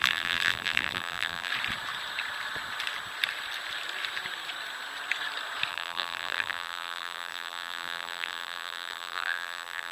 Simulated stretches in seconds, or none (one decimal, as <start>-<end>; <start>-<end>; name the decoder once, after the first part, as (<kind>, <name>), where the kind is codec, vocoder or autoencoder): 0.0-1.5 (vocoder, BigVGAN v2); 5.7-9.9